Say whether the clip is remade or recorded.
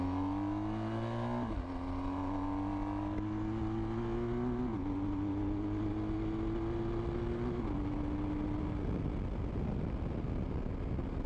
recorded